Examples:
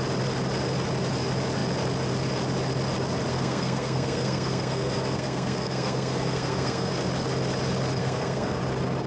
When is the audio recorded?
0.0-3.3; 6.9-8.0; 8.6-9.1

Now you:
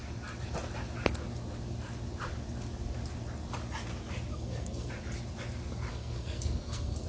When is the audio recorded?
0.0-4.3; 4.9-5.9

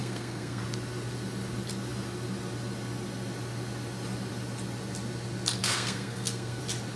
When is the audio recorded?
0.6-5.6; 6.6-7.0

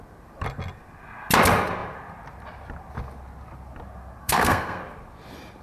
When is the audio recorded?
0.0-4.2; 4.8-5.6

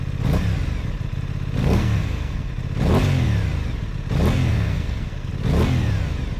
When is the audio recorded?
0.0-1.6; 2.5-4.5; 5.3-6.4

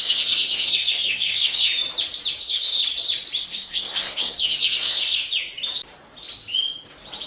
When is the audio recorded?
1.7-2.4; 2.8-3.4; 5.2-7.3